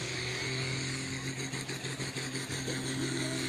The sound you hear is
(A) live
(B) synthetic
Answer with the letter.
B